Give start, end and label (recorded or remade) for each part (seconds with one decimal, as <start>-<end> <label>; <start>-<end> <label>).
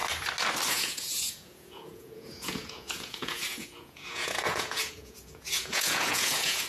0.0-0.7 recorded; 0.7-6.7 remade